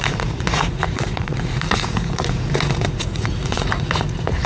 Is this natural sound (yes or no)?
no